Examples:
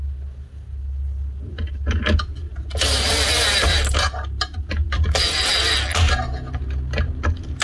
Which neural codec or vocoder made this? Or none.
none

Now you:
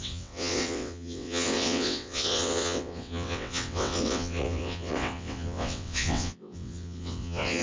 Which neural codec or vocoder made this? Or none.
vocoder, WaveNeXt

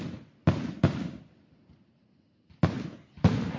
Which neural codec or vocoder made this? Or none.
none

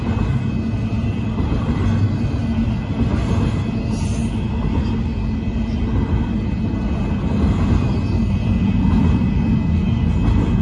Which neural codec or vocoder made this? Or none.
none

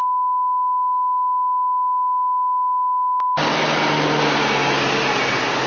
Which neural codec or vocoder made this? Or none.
none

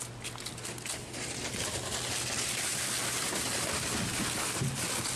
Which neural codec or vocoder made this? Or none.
none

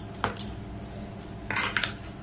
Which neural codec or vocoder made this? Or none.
none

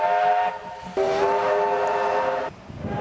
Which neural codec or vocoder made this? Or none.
none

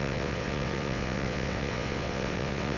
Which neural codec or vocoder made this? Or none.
vocoder, WaveNeXt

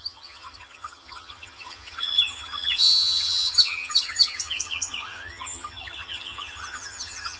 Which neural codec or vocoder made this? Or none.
vocoder, HiFi-GAN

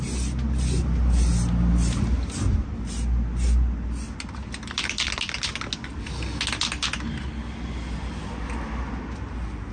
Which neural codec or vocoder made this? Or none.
none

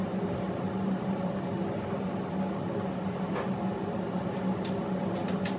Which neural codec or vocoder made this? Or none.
none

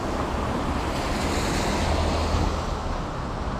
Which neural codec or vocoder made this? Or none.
none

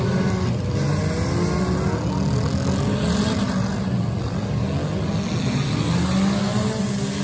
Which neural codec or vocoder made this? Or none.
none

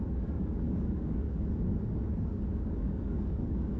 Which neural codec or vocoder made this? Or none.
codec, DAC